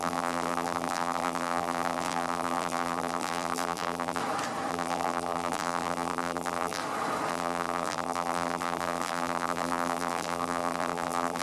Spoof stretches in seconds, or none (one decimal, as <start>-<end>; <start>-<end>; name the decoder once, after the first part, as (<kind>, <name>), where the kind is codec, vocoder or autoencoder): 0.0-4.2 (vocoder, BigVGAN v2); 4.7-6.8; 7.3-11.4